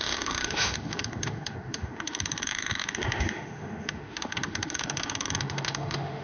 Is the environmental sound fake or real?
fake